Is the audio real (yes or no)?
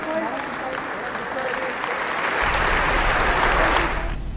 yes